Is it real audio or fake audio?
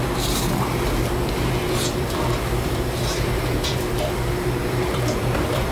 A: fake